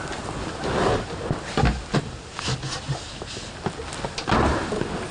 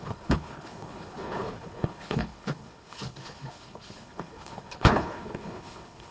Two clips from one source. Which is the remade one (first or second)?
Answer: second